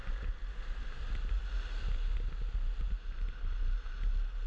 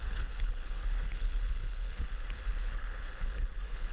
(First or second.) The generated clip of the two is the second